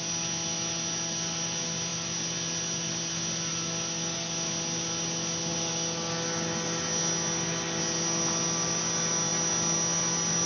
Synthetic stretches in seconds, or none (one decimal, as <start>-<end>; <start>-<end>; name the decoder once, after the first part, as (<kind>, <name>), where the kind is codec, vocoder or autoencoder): none